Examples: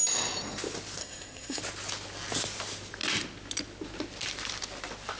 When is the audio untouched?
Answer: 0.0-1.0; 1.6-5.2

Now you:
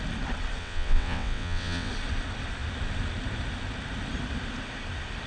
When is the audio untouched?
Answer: 0.0-0.6; 1.9-5.3